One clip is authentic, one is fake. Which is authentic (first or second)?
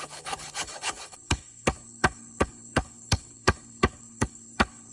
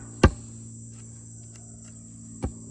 second